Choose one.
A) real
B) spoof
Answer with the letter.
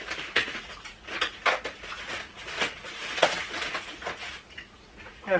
B